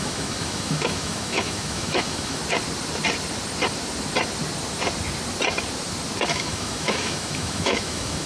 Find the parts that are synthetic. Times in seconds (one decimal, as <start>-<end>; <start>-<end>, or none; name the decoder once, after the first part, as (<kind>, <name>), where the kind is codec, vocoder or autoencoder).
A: 0.0-2.4 (autoencoder, DAC-VAE); 6.3-8.3